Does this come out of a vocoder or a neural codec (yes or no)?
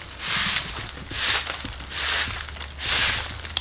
no